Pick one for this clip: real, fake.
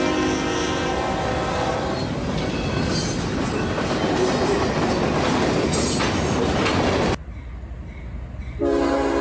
real